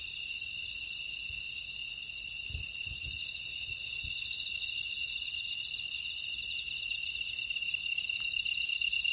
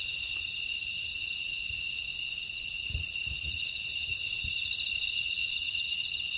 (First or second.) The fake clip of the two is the second